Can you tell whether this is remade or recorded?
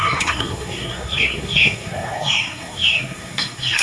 remade